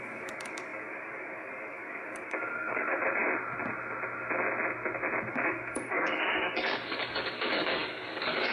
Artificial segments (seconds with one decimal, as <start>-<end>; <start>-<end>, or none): 0.0-3.0; 5.3-8.5